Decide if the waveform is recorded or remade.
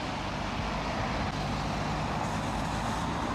recorded